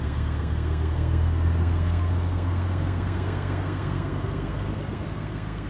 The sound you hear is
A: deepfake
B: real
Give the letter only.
A